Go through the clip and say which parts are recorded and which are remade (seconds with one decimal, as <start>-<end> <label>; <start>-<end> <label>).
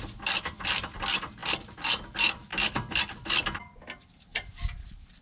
0.0-1.4 recorded; 1.4-2.0 remade; 2.0-2.5 recorded; 2.5-3.0 remade; 3.0-4.3 recorded; 4.3-5.2 remade